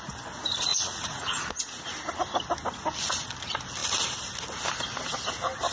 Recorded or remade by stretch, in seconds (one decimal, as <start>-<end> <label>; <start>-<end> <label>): 0.0-0.7 recorded; 0.7-1.6 remade; 1.6-5.7 recorded